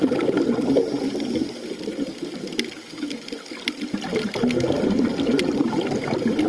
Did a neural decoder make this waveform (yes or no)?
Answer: no